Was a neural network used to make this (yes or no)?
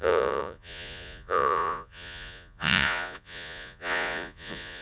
yes